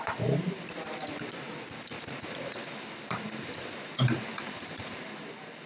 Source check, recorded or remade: remade